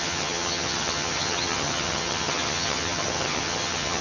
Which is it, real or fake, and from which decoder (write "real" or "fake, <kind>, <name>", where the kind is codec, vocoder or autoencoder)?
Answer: fake, vocoder, HiFi-GAN